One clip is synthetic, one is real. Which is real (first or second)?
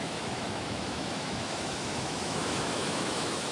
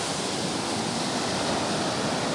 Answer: second